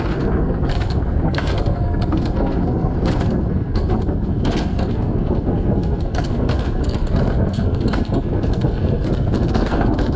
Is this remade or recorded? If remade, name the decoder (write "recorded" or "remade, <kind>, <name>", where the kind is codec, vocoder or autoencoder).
remade, codec, SNAC